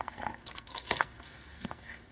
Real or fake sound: fake